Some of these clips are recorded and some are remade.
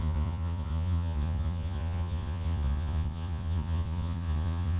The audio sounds remade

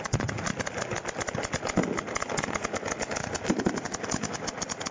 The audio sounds recorded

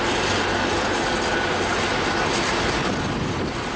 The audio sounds recorded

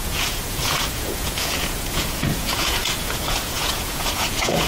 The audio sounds remade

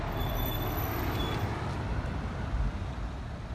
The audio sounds recorded